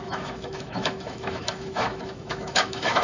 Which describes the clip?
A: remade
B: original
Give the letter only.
A